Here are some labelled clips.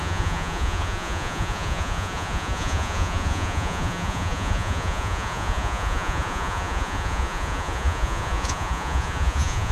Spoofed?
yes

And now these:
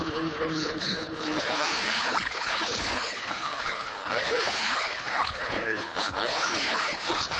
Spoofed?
yes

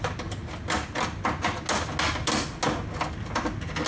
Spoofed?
no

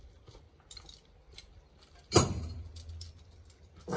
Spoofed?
no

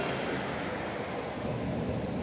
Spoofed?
no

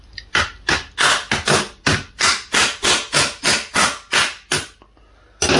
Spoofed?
no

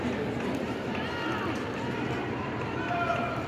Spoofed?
no